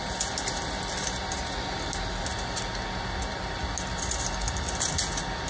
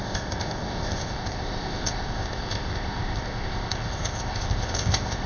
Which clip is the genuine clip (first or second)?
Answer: first